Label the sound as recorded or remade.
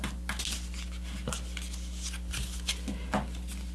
recorded